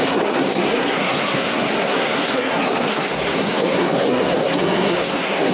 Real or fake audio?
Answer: fake